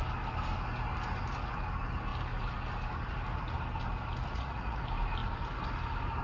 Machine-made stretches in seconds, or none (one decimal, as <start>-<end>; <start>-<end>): 4.2-4.8